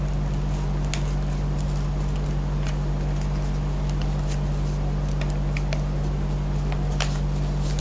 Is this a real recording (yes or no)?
yes